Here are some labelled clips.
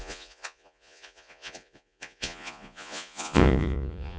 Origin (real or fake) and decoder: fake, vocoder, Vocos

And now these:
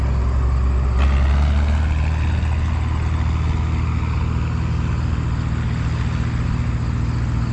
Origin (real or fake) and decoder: real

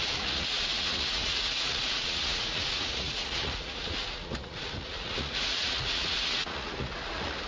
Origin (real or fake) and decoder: fake, vocoder, Vocos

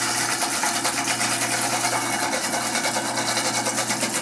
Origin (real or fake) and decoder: real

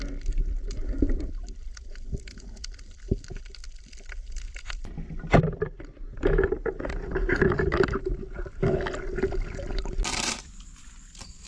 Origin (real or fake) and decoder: real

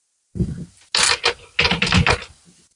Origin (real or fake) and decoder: real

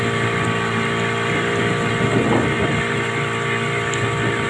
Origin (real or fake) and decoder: real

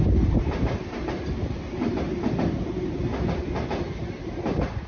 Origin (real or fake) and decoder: real